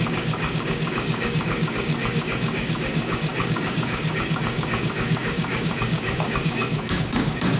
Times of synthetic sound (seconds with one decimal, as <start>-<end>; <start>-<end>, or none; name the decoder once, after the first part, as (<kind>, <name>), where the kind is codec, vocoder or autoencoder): 0.0-7.6 (codec, DAC)

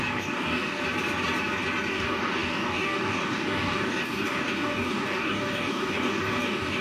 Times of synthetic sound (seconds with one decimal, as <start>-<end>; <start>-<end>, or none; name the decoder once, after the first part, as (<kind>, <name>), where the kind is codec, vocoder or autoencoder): 0.0-0.8 (codec, DAC); 1.9-6.8

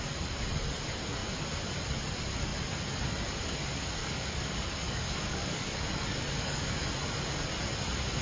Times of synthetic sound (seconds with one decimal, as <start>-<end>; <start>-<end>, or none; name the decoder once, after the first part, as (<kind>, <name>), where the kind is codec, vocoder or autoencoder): 4.0-6.6 (codec, DAC)

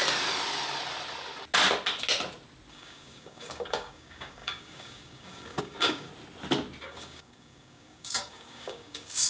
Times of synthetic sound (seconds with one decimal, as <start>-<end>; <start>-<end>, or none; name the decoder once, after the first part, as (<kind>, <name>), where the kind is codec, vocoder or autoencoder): 2.7-6.1 (codec, DAC); 6.8-9.3

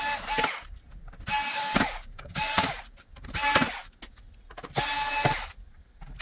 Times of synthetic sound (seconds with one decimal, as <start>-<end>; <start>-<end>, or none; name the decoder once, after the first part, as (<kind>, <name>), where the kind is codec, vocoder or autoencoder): 1.5-2.8 (codec, DAC)

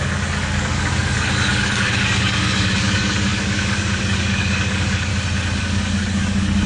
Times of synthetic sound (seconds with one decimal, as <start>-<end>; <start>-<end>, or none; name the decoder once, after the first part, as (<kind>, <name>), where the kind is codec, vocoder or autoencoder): 0.0-5.1 (codec, DAC); 5.6-6.7